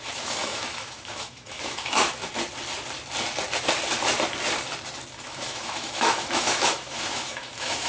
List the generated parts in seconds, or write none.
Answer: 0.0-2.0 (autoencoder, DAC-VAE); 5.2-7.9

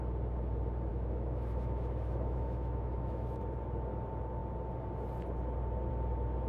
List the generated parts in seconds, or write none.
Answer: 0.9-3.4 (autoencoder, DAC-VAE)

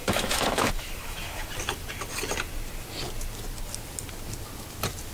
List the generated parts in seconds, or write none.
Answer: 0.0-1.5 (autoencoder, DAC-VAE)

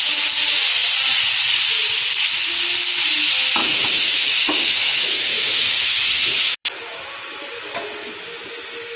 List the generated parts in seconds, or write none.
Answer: 3.6-8.2 (autoencoder, DAC-VAE)